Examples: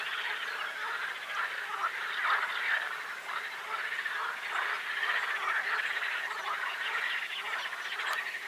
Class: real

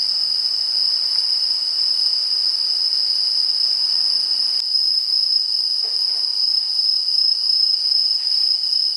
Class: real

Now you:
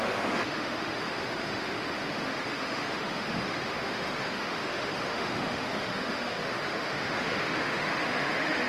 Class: fake